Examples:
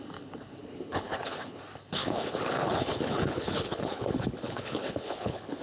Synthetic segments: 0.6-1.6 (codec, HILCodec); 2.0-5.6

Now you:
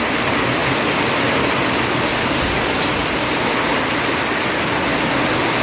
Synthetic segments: none